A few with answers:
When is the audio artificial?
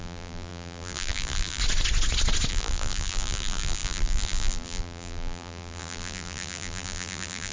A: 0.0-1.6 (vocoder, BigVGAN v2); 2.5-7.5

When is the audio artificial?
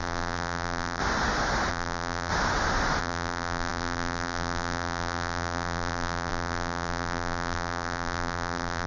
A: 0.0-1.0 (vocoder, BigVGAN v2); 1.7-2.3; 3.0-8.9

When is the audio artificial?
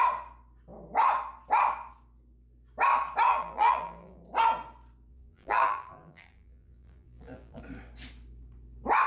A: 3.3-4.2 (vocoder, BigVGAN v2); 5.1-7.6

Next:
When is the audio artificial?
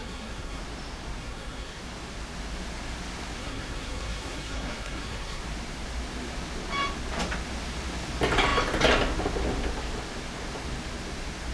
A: 0.0-0.6 (codec, SNAC); 1.2-1.8; 3.4-5.4